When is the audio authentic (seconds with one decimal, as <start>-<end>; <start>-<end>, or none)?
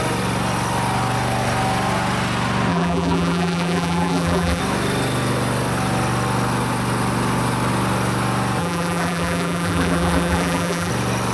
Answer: 0.0-2.7; 4.6-8.6; 10.9-11.3